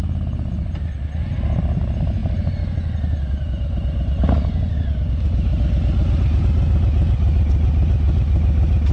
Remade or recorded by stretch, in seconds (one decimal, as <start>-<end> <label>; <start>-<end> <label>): 0.0-8.9 recorded